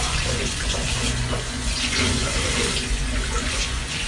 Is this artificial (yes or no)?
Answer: yes